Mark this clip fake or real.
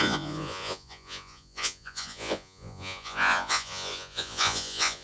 fake